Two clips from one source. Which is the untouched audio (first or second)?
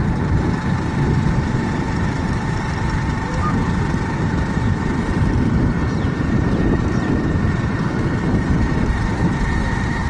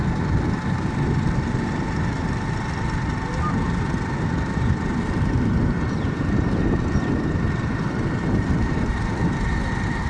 second